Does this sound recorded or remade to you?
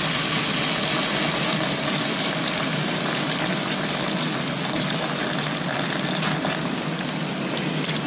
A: recorded